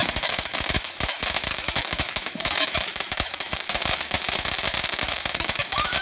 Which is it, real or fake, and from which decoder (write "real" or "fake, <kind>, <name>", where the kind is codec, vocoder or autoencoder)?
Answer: fake, autoencoder, DAC-VAE